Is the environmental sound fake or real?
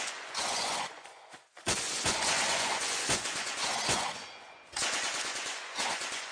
fake